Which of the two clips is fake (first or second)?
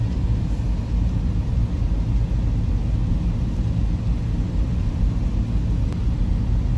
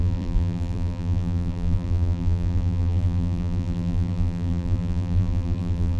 second